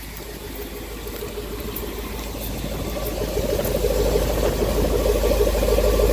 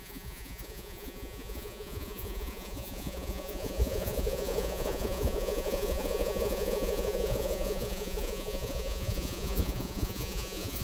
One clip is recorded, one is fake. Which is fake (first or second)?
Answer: second